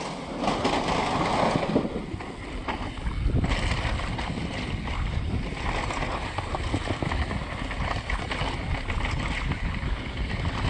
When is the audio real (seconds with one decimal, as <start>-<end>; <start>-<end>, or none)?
0.0-10.7